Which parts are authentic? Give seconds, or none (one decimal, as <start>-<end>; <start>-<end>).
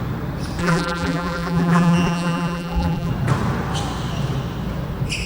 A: 0.0-0.6; 3.1-5.3